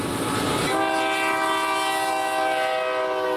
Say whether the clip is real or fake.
real